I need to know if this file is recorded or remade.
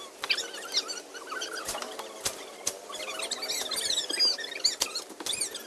recorded